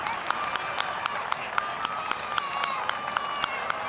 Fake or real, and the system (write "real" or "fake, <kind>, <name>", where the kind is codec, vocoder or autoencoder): real